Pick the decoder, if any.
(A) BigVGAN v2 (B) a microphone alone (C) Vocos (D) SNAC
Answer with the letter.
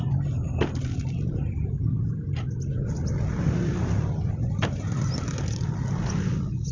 B